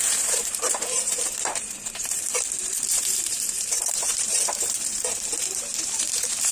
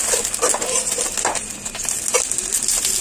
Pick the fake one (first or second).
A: first